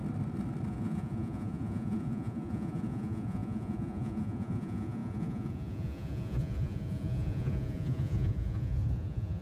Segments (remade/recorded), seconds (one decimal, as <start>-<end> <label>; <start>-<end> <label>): 0.0-0.7 recorded; 0.7-9.4 remade